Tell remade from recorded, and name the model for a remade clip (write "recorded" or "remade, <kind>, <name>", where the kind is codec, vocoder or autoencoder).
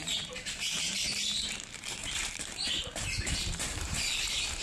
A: remade, vocoder, BigVGAN v2